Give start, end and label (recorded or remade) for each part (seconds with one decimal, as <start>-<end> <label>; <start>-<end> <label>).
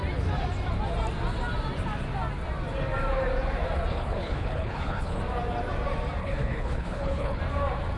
0.0-3.9 recorded; 3.9-5.2 remade; 5.2-6.2 recorded; 6.2-7.4 remade; 7.4-8.0 recorded